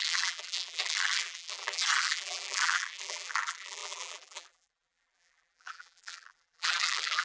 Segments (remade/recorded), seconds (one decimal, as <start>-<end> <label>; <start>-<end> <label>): 0.0-7.2 remade